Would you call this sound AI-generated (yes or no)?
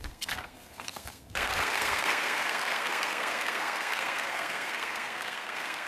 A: yes